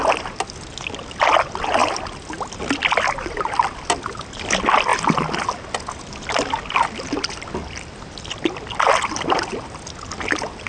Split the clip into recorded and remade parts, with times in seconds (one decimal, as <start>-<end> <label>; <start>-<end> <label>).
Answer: 0.0-10.7 recorded